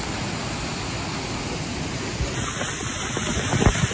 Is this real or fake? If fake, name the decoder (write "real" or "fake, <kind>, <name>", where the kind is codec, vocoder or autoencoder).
real